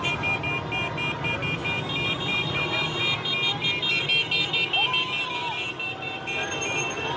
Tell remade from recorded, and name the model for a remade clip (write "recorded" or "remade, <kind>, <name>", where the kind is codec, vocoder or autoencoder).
recorded